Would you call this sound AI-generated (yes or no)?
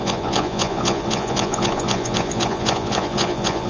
yes